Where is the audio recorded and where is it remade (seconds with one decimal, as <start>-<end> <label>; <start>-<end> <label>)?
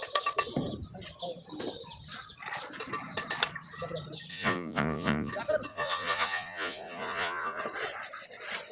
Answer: 0.0-4.3 recorded; 4.3-5.3 remade; 5.3-5.7 recorded; 5.7-7.6 remade; 7.6-8.7 recorded